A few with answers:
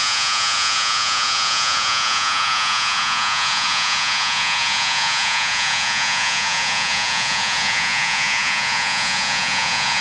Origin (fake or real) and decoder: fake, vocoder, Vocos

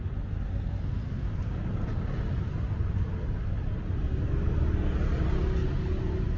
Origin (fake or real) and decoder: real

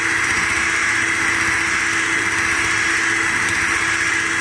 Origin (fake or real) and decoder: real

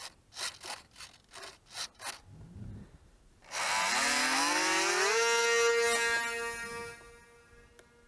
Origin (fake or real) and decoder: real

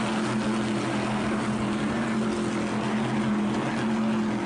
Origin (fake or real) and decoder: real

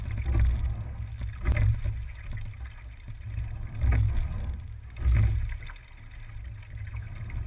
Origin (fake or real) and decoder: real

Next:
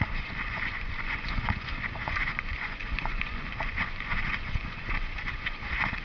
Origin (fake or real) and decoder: fake, vocoder, Vocos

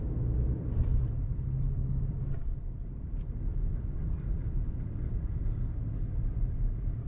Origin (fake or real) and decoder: fake, vocoder, BigVGAN v2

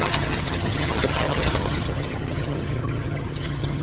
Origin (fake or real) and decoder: fake, vocoder, HiFi-GAN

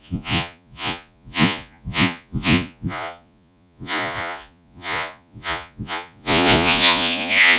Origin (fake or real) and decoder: fake, vocoder, Vocos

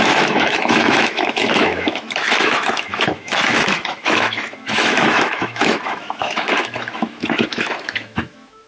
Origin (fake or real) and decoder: fake, autoencoder, DAC-VAE